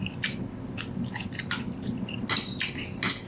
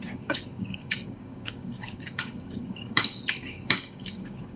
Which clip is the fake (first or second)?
second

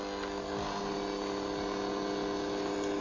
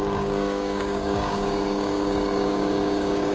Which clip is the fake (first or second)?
second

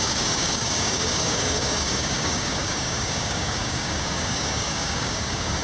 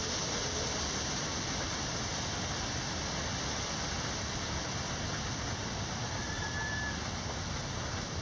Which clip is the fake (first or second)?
first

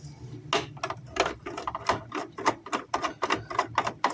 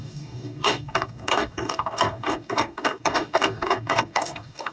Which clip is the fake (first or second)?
second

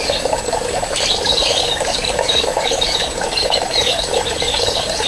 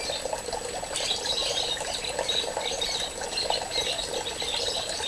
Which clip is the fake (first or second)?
first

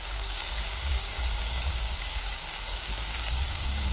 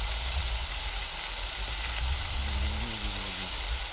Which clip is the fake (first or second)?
first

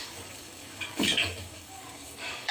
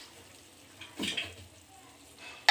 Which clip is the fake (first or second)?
first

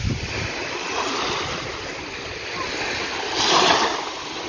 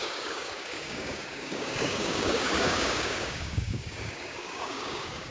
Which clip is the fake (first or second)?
second